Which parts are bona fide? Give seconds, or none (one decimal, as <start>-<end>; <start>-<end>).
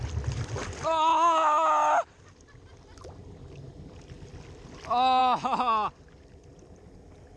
0.0-7.4